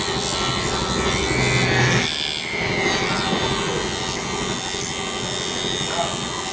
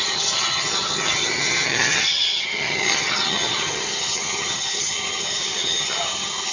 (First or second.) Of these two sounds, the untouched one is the first